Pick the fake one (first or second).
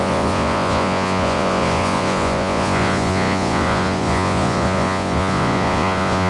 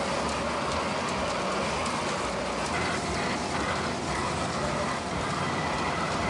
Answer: first